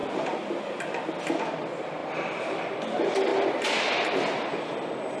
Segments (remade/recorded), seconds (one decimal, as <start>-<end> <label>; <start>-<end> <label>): 0.0-5.2 recorded